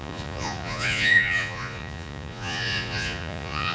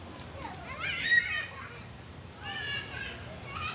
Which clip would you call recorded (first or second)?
second